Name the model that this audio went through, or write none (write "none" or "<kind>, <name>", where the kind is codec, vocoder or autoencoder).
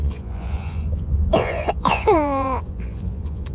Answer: vocoder, Vocos